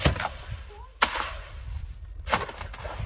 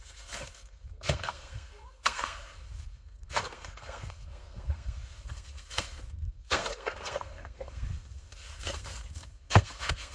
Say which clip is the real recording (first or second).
first